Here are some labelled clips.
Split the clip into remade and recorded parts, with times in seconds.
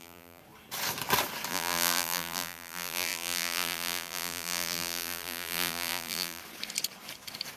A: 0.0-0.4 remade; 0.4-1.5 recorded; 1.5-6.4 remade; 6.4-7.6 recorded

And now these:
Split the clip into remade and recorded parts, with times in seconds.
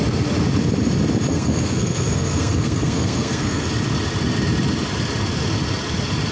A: 0.0-1.3 recorded; 1.3-3.7 remade; 3.7-6.3 recorded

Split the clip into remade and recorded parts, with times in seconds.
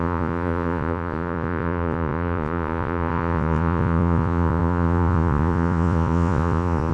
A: 0.0-6.9 remade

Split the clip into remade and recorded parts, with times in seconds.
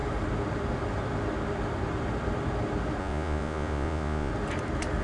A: 0.0-3.0 recorded; 3.0-4.3 remade; 4.3-5.0 recorded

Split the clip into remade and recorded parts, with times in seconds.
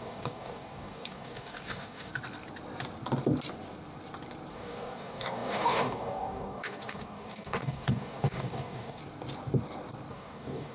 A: 0.0-2.1 remade; 2.1-4.5 recorded; 4.5-9.0 remade; 9.0-10.1 recorded; 10.1-10.7 remade